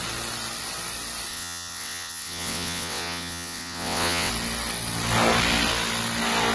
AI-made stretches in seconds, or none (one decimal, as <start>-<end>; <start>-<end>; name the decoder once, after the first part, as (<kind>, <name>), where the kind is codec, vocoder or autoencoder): 1.3-4.3 (vocoder, WaveNeXt)